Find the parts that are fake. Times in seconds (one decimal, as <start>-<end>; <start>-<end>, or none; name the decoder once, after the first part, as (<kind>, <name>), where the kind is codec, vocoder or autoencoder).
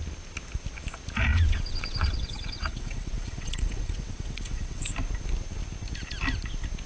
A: 1.3-4.9 (vocoder, WaveNeXt)